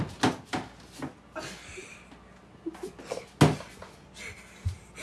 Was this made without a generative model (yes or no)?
yes